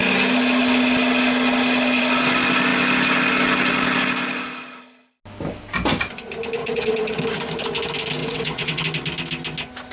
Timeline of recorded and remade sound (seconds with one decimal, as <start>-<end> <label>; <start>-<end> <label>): 0.0-6.6 recorded; 6.6-7.2 remade; 7.2-8.2 recorded; 8.2-8.8 remade; 8.8-9.9 recorded